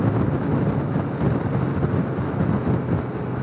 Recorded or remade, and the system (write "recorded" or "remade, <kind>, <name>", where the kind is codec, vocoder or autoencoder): recorded